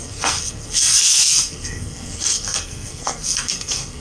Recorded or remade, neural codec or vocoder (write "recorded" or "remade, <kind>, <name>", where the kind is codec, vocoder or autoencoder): remade, codec, SNAC